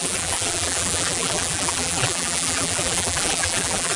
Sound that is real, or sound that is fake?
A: fake